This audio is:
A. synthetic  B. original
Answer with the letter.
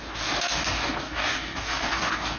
A